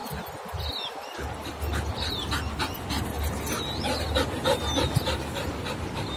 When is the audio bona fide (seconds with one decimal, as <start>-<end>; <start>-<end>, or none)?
0.0-6.2